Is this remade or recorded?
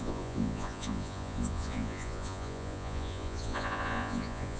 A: remade